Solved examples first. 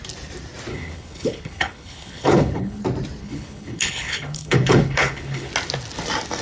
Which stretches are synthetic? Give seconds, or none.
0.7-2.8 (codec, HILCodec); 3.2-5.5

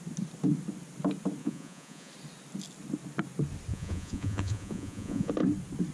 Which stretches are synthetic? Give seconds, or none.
1.4-2.1 (vocoder, Vocos); 3.7-5.3

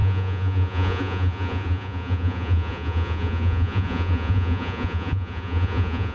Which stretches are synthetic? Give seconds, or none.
0.0-6.1 (vocoder, Vocos)